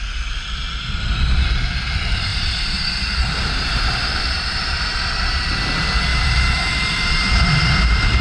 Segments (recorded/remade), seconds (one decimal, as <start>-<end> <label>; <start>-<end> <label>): 0.0-2.3 recorded; 2.3-5.5 remade; 5.5-6.1 recorded; 6.1-8.2 remade